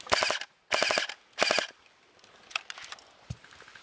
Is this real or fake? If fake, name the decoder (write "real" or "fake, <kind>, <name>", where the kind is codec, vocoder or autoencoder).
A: real